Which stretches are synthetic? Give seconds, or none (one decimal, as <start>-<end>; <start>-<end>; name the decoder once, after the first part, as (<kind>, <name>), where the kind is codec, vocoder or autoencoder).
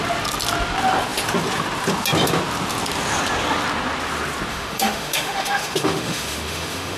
4.5-7.0 (autoencoder, DAC-VAE)